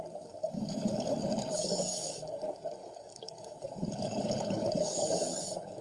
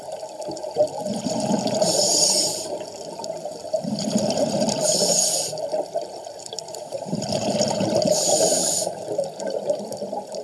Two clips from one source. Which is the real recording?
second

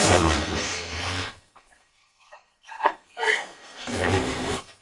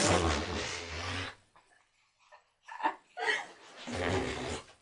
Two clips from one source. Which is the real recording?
second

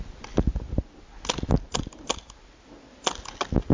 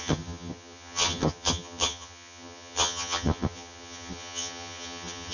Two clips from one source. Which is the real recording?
first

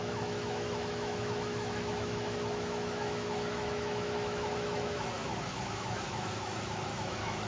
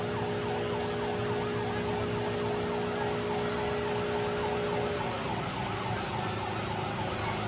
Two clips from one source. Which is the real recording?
second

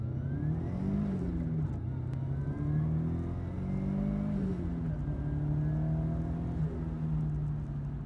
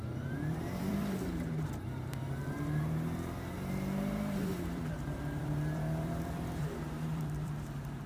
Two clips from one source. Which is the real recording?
first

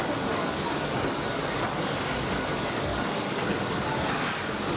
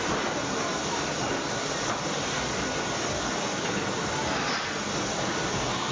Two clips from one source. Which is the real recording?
second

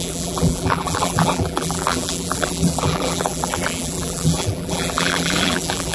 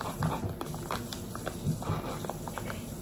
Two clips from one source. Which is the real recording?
second